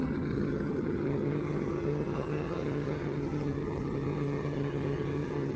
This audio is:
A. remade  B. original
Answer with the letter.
A